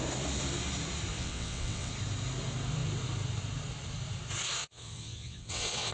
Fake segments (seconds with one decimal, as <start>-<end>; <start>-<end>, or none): 1.1-1.9; 4.6-5.9

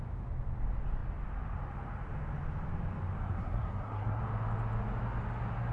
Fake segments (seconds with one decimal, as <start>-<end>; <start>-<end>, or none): 3.2-4.2

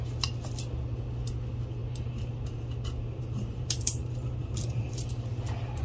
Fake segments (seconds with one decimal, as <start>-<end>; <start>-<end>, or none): 1.8-5.1

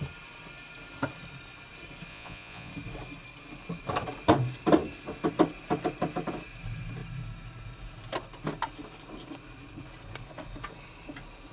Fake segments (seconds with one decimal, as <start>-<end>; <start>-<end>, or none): 2.1-2.7

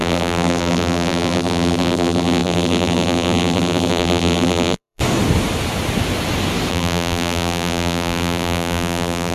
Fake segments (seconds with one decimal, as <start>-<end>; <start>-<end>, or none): 0.0-5.0; 6.7-9.3

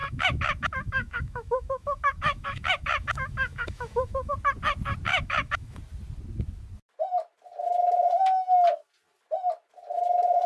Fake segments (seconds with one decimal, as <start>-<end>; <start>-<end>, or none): 0.0-4.3; 5.1-5.8

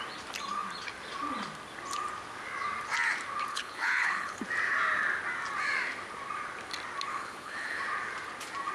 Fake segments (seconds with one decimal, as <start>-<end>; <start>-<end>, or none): 3.5-4.4; 7.1-7.8

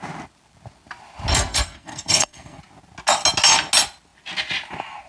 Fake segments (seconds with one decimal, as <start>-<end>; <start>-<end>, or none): 1.3-2.6